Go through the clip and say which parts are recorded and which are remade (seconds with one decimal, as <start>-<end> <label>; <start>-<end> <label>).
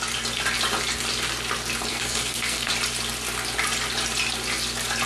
0.0-1.9 recorded; 1.9-2.7 remade; 2.7-5.1 recorded